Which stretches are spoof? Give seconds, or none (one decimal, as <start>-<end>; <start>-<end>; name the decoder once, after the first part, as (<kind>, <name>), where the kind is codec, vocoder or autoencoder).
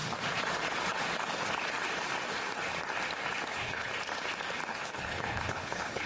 3.5-3.9 (codec, HILCodec); 4.7-6.1